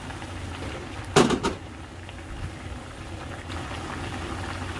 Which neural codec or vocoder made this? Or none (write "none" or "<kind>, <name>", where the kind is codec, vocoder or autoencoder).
none